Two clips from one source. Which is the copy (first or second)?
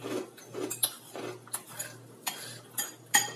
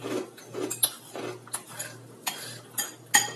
first